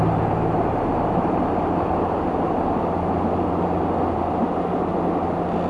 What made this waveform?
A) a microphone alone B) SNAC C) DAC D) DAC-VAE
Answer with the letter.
A